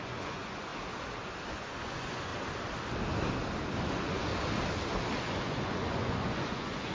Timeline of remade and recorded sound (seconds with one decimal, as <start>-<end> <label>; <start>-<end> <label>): 0.0-0.7 remade; 0.7-1.5 recorded; 1.5-2.3 remade; 2.3-3.8 recorded; 3.8-4.3 remade; 4.3-5.2 recorded; 5.2-6.9 remade